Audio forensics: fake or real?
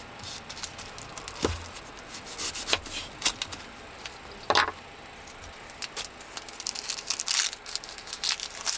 real